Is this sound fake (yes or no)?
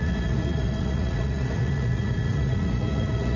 yes